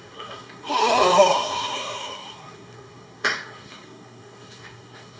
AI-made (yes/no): yes